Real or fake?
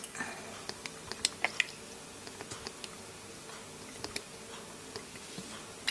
real